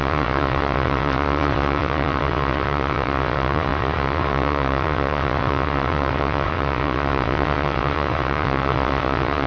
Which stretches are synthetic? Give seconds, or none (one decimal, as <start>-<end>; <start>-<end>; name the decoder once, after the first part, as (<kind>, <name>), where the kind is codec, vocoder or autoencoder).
0.0-9.5 (vocoder, WaveNeXt)